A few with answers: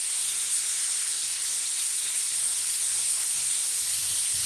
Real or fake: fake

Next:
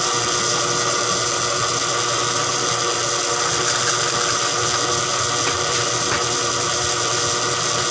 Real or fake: real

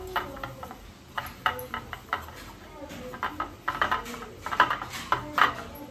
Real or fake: real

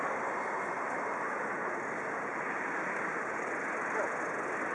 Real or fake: real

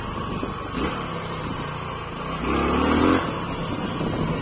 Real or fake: real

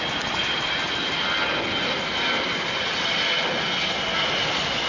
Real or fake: real